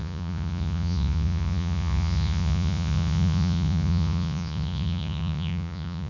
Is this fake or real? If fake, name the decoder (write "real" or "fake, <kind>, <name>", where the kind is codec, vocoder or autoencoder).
fake, vocoder, Vocos